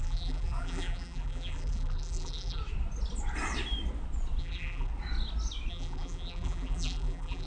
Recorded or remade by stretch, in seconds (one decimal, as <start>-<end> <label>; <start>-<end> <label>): 0.0-2.6 remade; 2.6-4.4 recorded; 4.4-4.9 remade; 4.9-5.7 recorded; 5.7-7.5 remade